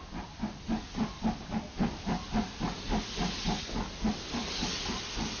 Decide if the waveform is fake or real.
real